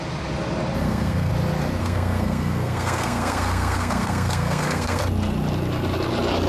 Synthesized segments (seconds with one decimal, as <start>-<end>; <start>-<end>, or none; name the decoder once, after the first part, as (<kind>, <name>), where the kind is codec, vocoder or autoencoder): 0.8-1.3 (codec, SNAC); 1.8-5.0